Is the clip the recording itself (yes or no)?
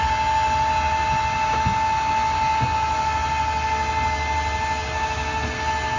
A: yes